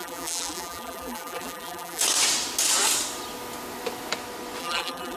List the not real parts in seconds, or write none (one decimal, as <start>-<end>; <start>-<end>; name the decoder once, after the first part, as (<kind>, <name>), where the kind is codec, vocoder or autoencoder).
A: 0.0-2.0 (vocoder, BigVGAN v2); 4.6-5.2